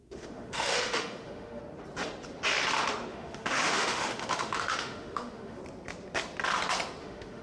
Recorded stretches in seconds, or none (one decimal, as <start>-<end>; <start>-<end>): 1.6-3.1; 5.6-7.0